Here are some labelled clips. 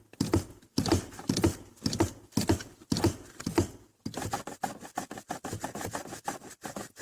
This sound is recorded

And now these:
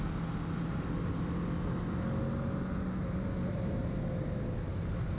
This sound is recorded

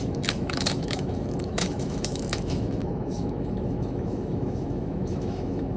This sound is remade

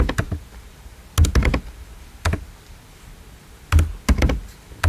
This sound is recorded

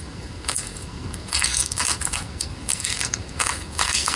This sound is remade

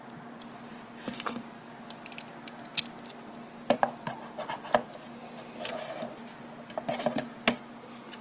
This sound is recorded